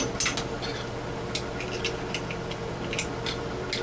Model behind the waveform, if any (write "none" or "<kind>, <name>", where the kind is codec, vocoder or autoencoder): none